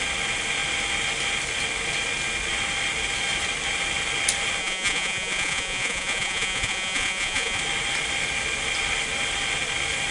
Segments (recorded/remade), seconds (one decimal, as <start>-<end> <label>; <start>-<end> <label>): 0.0-4.6 recorded; 4.6-7.6 remade; 7.6-10.1 recorded